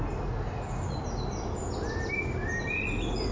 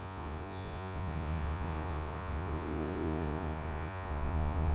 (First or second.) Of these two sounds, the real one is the first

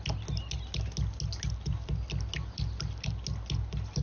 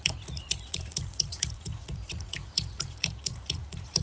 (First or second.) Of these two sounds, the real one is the first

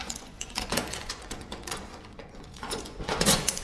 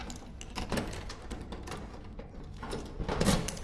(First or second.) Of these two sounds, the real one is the second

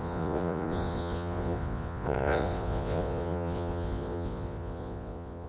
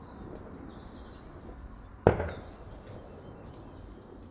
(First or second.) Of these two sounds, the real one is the second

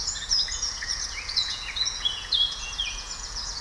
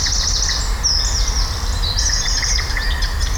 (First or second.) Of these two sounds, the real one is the second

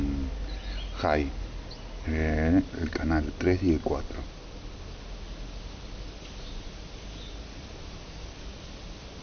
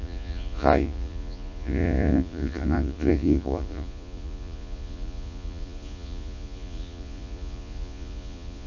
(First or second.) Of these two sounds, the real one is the first